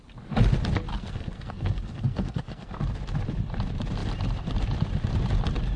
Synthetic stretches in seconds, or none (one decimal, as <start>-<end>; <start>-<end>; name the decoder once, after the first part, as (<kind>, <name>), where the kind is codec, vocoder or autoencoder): 0.9-2.8 (codec, SNAC)